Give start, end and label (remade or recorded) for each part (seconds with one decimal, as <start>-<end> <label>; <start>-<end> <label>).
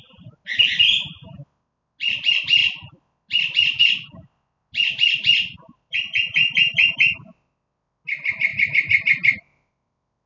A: 0.0-10.3 recorded